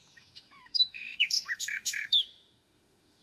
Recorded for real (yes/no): no